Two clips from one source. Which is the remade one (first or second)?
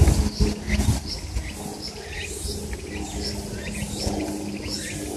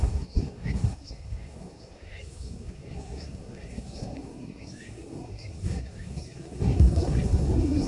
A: second